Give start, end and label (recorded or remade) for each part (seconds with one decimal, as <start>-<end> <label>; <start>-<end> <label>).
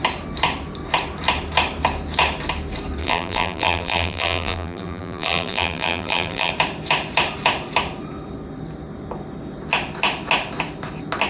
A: 0.0-3.0 recorded; 3.0-6.5 remade; 6.5-11.3 recorded